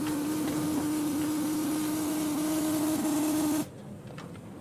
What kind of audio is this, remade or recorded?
recorded